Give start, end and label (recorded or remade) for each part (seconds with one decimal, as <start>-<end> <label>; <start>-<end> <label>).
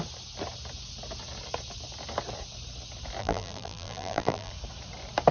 0.0-3.2 recorded; 3.2-4.5 remade; 4.5-5.3 recorded